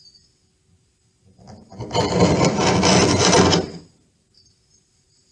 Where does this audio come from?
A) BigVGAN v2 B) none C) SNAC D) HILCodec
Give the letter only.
B